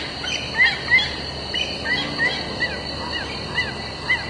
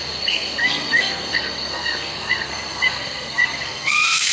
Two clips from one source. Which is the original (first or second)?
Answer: first